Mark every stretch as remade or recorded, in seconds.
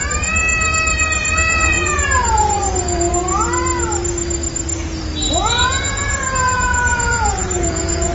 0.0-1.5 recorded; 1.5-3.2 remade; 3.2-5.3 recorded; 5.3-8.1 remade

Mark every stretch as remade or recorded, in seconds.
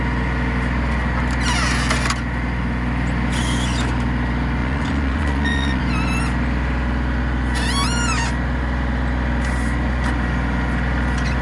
0.0-4.6 recorded; 4.6-5.8 remade; 5.8-11.4 recorded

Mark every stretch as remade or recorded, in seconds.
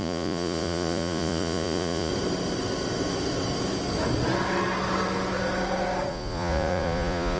0.0-2.1 remade; 2.1-6.1 recorded; 6.1-7.4 remade